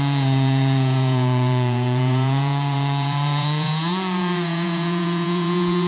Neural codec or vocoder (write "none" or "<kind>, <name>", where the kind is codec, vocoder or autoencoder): vocoder, Vocos